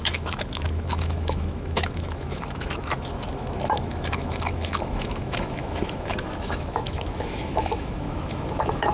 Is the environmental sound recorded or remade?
remade